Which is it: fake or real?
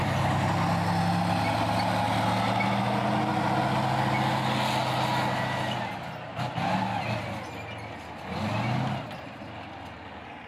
real